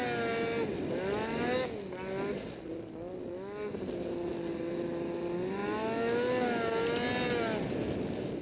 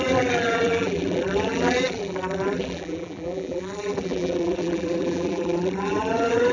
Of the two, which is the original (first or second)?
first